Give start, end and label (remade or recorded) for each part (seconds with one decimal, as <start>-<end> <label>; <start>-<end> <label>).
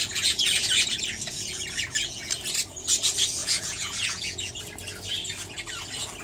0.0-2.3 remade; 2.3-3.4 recorded; 3.4-4.5 remade; 4.5-6.2 recorded